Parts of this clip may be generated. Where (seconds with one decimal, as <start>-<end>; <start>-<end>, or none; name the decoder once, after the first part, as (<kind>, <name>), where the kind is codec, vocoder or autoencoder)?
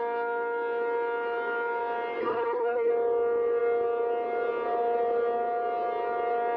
2.2-2.9 (codec, SNAC)